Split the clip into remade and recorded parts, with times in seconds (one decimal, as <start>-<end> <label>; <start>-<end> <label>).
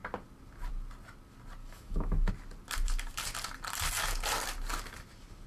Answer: 0.0-1.6 recorded; 1.6-2.3 remade; 2.3-5.5 recorded